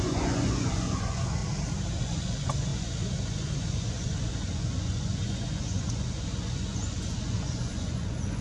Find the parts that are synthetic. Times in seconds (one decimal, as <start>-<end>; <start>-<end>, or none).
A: 0.0-1.4; 2.0-8.4